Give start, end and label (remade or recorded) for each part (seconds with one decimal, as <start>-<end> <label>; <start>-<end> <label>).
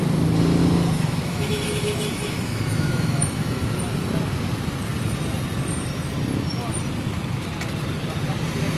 0.0-0.6 recorded; 0.6-3.8 remade; 3.8-8.8 recorded